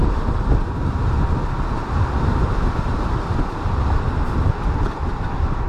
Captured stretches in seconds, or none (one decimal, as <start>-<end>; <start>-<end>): 0.0-5.7